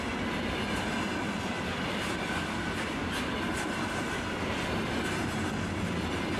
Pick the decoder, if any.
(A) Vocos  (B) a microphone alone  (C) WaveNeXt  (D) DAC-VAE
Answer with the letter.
B